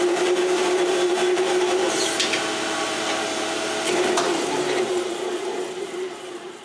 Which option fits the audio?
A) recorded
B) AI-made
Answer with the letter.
B